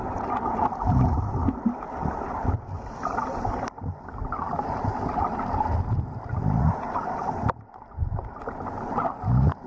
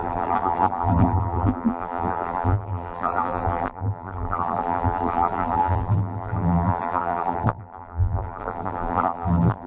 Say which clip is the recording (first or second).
first